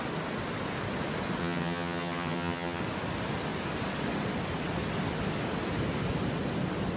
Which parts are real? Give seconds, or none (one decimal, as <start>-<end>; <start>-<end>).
0.0-1.4; 2.8-7.0